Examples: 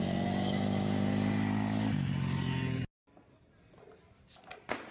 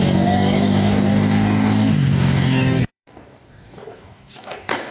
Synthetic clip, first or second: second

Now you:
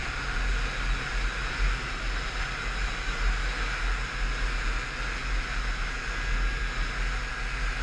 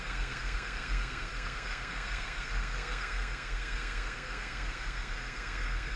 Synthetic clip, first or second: second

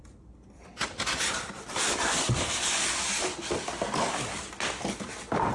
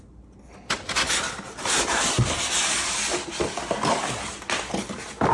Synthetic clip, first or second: first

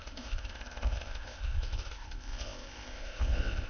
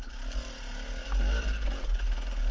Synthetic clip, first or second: first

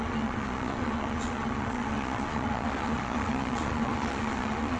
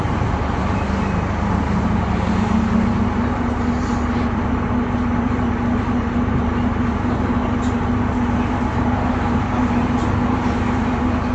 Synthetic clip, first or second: first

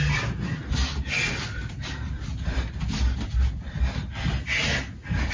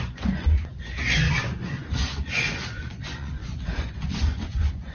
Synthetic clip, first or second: second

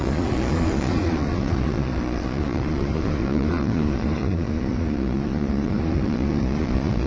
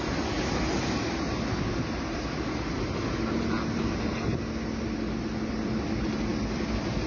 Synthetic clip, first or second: first